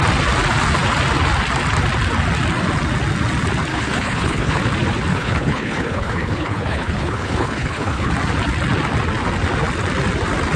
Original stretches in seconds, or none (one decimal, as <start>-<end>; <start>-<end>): 0.0-3.7; 4.6-5.1; 8.1-10.6